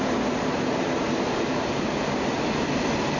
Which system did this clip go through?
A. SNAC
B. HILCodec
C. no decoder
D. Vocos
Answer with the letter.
C